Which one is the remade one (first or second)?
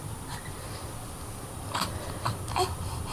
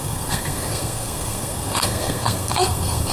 second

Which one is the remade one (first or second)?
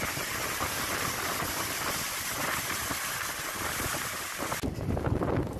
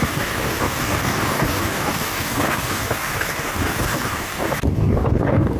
second